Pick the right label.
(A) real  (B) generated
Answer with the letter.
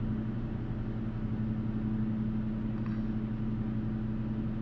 A